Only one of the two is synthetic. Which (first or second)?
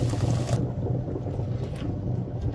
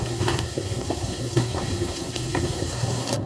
second